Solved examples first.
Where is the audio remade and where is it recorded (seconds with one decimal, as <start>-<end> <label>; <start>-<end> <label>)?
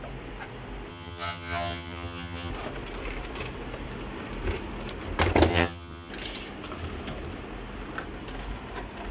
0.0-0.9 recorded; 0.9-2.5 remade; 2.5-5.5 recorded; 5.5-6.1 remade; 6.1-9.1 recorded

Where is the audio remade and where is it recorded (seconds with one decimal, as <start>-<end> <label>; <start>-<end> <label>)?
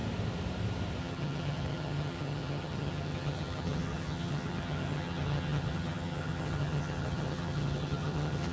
0.0-1.0 recorded; 1.0-8.5 remade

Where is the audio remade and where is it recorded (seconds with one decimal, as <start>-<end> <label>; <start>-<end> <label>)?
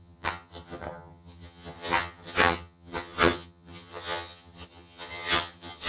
0.0-5.9 remade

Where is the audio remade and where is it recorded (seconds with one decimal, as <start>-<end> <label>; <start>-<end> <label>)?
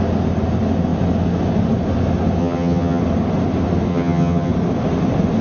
0.0-2.4 recorded; 2.4-3.0 remade; 3.0-3.9 recorded; 3.9-4.5 remade; 4.5-5.4 recorded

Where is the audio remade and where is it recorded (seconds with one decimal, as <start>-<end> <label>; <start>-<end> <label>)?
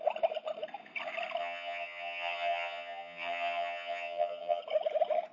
0.0-1.4 recorded; 1.4-4.6 remade; 4.6-5.3 recorded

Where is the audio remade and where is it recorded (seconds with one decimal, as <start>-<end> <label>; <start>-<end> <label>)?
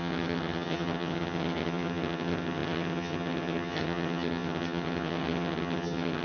0.0-6.2 remade